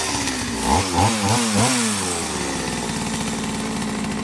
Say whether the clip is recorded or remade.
recorded